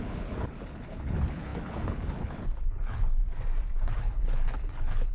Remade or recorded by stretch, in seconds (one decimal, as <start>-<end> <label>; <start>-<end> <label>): 0.0-3.2 remade; 3.2-3.8 recorded; 3.8-5.1 remade